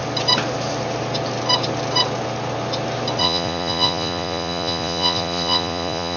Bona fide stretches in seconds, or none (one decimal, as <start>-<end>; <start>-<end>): 0.0-3.2